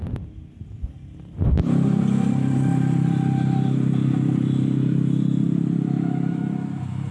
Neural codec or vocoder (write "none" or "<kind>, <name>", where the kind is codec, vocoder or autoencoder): none